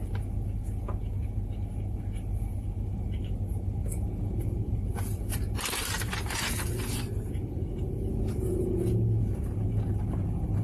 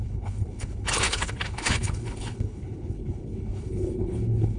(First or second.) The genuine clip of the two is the first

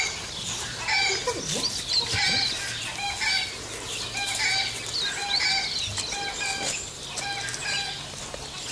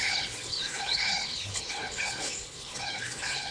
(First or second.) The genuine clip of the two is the first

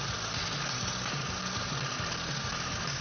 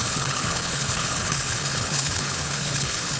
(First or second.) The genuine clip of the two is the first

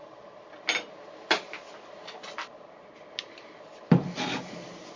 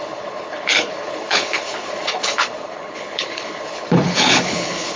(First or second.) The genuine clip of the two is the first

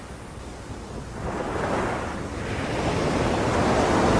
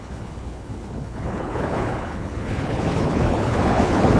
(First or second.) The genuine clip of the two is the first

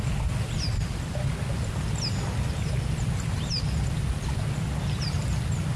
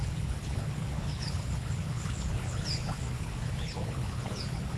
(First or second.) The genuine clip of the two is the first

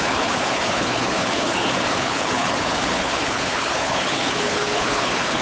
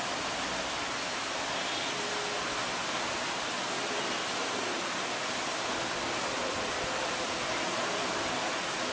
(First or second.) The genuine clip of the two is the second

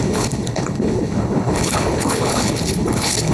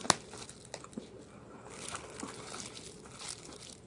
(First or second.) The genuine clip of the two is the second